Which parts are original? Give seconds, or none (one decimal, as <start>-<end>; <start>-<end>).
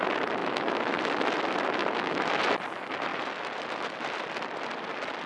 0.0-0.4; 1.0-1.8; 2.4-5.3